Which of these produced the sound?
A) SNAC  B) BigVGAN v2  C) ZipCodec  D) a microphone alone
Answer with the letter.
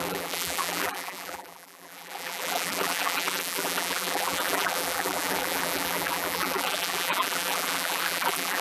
B